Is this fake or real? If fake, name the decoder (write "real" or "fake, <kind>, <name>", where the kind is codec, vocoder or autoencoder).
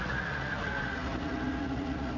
fake, vocoder, Vocos